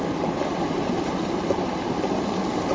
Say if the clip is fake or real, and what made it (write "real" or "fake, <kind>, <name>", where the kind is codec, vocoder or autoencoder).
real